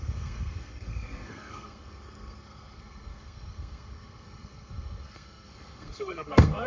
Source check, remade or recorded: remade